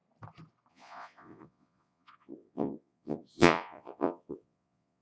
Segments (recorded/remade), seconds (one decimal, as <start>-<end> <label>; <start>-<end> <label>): 0.0-0.7 recorded; 0.7-5.0 remade

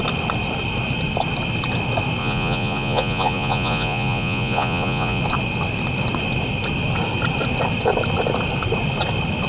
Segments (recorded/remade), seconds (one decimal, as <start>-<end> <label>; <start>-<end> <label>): 0.0-2.2 recorded; 2.2-5.2 remade; 5.2-9.5 recorded